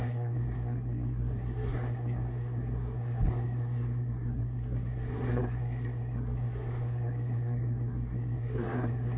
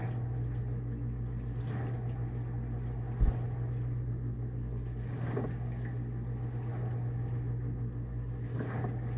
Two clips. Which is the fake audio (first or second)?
first